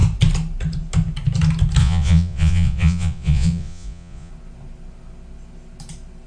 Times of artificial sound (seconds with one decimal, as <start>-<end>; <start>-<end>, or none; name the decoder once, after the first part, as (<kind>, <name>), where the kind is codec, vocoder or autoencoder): 1.8-4.3 (vocoder, Vocos)